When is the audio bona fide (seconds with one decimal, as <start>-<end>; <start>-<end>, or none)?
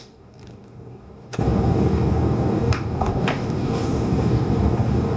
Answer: none